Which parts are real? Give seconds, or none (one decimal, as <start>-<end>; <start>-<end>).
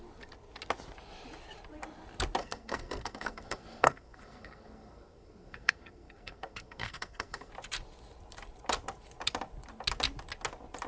0.0-2.4; 7.5-10.9